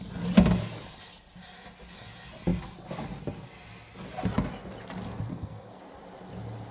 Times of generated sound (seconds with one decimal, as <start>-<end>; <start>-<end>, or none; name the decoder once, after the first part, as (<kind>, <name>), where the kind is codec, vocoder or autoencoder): 5.3-5.8 (codec, SNAC)